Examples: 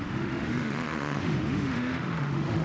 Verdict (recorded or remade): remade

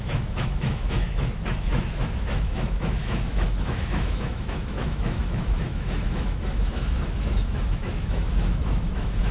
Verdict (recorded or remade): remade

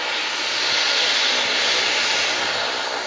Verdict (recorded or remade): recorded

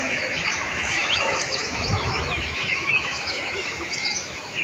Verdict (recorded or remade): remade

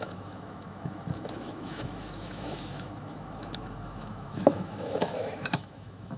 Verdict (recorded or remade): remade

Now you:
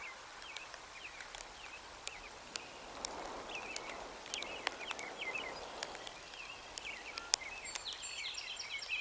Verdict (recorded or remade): recorded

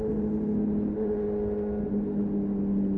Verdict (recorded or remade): recorded